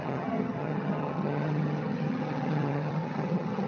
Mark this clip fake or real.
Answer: fake